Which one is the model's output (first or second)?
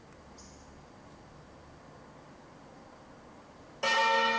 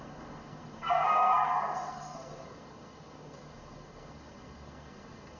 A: second